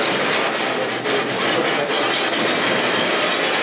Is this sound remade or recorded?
recorded